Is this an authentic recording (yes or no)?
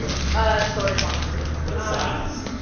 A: yes